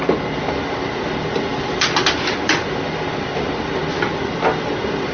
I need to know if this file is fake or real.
real